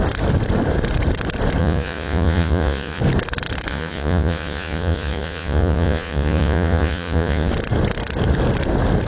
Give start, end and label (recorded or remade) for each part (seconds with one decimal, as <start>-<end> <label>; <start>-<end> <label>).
0.0-1.6 recorded; 1.6-3.0 remade; 3.0-3.7 recorded; 3.7-7.5 remade; 7.5-9.1 recorded